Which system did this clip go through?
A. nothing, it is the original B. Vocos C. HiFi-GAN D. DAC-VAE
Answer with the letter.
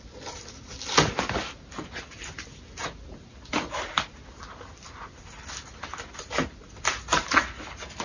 A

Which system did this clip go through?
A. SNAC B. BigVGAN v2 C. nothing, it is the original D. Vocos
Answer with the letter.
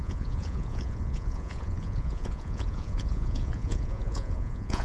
D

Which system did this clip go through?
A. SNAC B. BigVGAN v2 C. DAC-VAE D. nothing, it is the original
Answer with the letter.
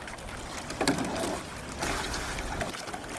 D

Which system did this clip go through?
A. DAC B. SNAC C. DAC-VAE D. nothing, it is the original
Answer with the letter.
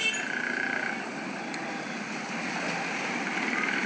D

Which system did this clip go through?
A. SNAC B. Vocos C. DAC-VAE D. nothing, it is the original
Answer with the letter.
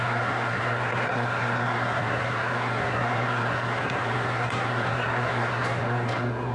A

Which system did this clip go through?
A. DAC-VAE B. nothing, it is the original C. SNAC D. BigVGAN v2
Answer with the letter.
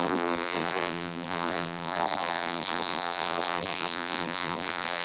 D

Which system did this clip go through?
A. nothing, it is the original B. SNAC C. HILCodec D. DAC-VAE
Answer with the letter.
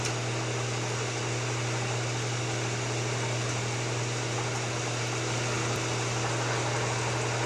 A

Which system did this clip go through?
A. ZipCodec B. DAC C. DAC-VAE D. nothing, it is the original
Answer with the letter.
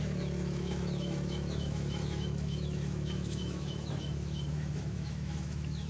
C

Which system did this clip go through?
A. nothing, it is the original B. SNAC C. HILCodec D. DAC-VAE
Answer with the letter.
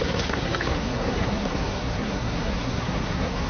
B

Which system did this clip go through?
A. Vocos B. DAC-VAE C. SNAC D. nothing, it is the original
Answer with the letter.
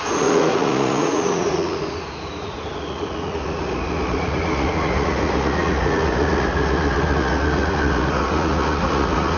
A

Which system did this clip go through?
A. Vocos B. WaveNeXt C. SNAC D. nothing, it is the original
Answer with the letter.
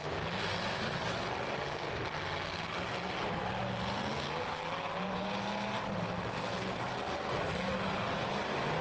D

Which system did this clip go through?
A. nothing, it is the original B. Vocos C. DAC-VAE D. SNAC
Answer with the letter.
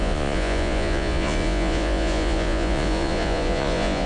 B